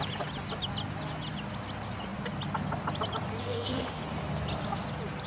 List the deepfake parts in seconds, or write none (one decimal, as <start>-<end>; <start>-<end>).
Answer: 3.4-4.0